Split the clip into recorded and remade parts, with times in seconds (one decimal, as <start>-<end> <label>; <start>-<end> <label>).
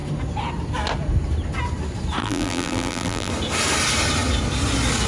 0.0-2.2 recorded; 2.2-3.3 remade; 3.3-5.1 recorded